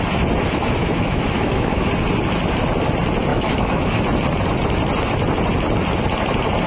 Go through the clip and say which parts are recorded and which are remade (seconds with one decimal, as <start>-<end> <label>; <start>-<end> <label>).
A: 0.0-0.8 recorded; 0.8-1.9 remade; 1.9-3.3 recorded; 3.3-4.0 remade; 4.0-6.7 recorded